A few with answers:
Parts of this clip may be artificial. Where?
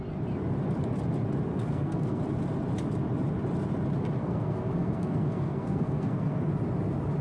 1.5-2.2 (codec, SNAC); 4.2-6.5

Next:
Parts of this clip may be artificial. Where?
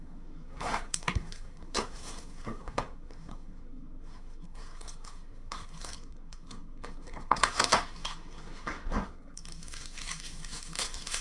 0.0-11.2 (codec, SNAC)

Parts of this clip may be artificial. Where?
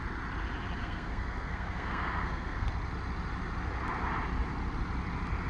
0.8-2.7 (codec, SNAC)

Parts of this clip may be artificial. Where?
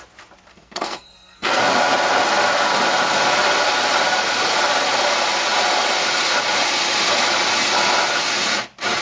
0.5-1.6 (codec, SNAC)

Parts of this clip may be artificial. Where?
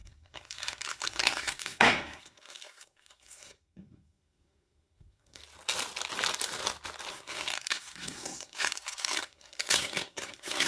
0.0-5.4 (codec, SNAC); 7.1-10.7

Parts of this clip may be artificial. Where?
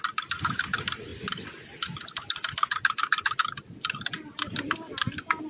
none